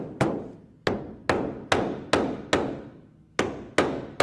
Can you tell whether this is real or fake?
real